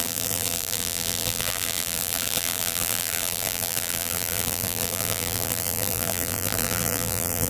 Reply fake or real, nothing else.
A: fake